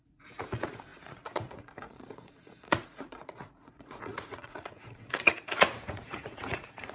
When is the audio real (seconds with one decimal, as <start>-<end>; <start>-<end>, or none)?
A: none

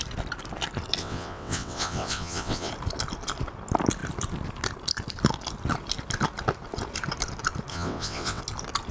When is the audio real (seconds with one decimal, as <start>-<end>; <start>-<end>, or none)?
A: 0.0-1.0; 2.7-7.7; 8.4-8.9

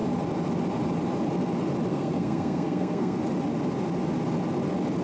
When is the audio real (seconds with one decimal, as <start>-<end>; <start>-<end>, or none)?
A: 0.0-1.9; 3.2-5.0

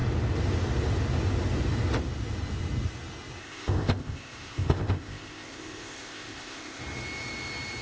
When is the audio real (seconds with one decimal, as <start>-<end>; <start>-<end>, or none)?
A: 0.0-3.4; 6.8-7.8

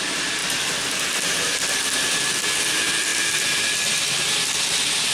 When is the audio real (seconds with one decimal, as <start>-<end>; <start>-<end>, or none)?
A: 0.0-5.1